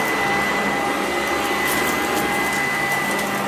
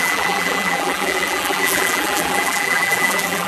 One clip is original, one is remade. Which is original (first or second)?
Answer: first